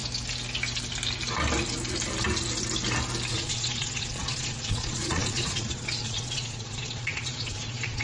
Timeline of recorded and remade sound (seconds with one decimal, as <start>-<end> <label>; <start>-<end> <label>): 0.0-3.3 recorded; 3.3-8.0 remade